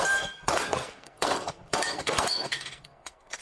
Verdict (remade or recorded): remade